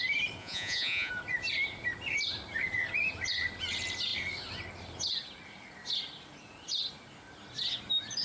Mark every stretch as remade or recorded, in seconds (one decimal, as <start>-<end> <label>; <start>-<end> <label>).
0.0-0.4 recorded; 0.4-1.1 remade; 1.1-8.2 recorded